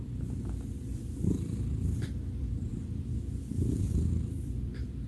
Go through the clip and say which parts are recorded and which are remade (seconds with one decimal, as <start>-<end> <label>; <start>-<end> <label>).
0.0-5.1 remade